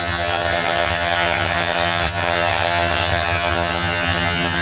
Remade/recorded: remade